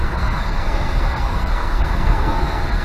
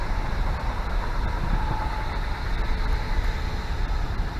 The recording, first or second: second